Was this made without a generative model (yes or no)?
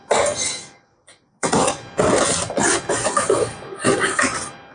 yes